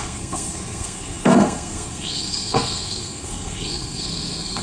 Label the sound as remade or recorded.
remade